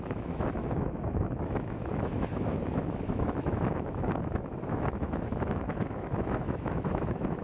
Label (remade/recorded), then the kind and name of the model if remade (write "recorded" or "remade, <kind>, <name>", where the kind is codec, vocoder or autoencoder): remade, autoencoder, DAC-VAE